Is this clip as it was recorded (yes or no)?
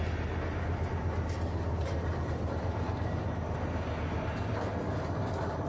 yes